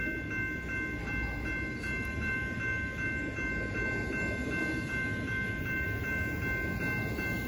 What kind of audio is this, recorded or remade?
recorded